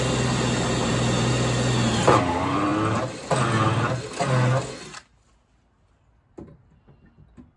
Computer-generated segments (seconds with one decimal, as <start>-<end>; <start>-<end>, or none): none